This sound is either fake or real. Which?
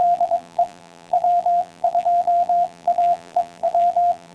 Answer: fake